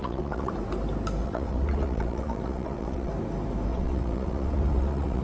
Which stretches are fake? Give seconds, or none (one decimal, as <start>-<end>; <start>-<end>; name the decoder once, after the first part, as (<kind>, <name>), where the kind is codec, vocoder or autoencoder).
0.0-0.5 (vocoder, WaveNeXt); 1.2-3.1; 3.7-5.2

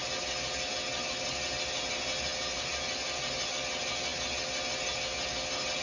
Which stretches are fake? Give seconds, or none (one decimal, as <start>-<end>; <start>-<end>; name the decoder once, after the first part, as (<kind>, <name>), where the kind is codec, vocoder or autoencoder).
none

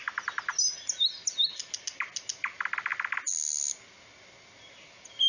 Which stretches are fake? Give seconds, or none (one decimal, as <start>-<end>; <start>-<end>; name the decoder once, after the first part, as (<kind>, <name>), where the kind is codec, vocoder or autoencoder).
none

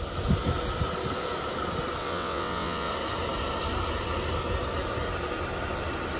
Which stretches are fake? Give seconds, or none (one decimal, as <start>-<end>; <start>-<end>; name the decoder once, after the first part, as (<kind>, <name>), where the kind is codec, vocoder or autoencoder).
2.0-2.9 (vocoder, WaveNeXt)

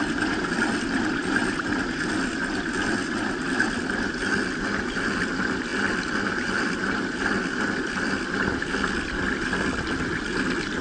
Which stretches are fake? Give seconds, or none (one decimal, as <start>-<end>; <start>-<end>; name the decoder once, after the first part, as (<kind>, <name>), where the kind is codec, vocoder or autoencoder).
none

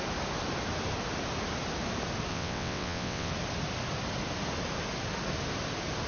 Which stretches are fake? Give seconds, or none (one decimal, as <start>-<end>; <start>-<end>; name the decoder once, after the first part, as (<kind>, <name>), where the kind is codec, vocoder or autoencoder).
2.3-3.3 (vocoder, WaveNeXt)

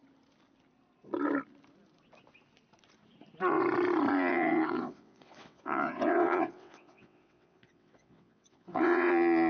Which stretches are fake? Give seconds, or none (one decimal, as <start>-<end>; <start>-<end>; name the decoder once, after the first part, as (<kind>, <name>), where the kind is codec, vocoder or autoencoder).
4.3-9.1 (vocoder, WaveNeXt)